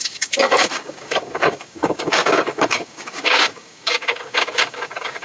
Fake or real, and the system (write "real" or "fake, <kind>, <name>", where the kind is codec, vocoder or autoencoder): fake, codec, DAC